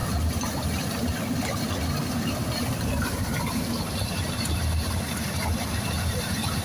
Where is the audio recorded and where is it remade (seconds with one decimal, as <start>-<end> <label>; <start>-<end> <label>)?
0.0-2.1 recorded; 2.1-6.6 remade